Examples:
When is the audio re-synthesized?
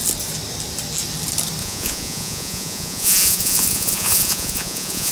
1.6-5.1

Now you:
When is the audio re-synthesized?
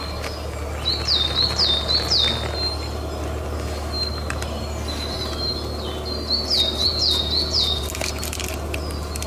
6.8-7.8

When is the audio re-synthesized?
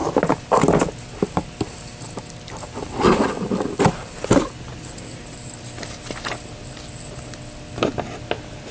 none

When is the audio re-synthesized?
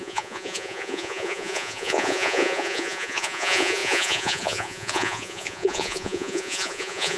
0.0-7.2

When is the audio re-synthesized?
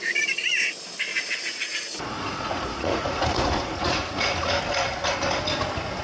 1.1-4.6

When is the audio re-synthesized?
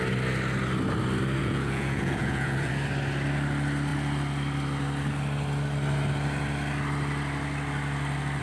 1.4-2.7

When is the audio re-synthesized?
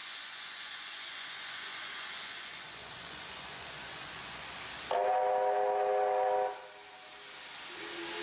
0.0-4.6